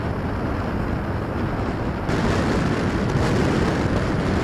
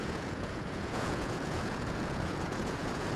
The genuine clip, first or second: first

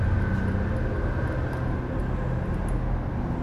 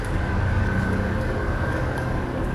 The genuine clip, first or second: first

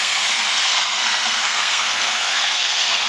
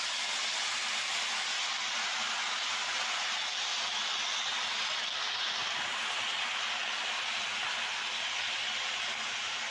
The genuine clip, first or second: second